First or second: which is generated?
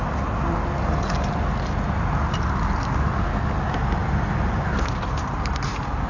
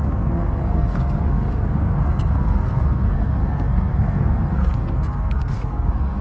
second